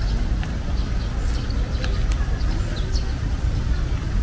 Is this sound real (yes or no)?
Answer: yes